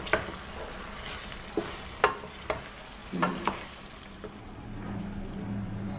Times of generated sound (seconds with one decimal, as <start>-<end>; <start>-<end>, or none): none